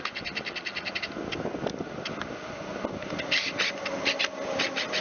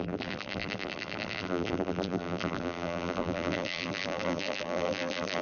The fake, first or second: second